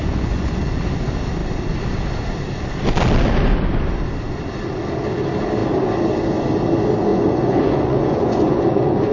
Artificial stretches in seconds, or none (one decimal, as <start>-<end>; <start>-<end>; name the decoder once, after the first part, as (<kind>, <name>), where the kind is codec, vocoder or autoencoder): 0.0-0.6 (vocoder, Vocos); 7.1-9.1